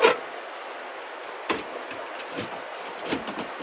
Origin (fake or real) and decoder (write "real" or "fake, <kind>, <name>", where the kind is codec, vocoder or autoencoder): real